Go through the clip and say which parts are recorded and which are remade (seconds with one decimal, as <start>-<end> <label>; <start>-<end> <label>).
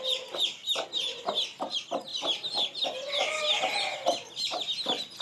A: 0.0-5.2 recorded